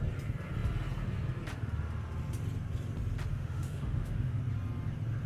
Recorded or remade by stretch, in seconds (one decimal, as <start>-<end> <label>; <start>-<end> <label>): 0.0-3.3 recorded; 3.3-4.4 remade; 4.4-5.3 recorded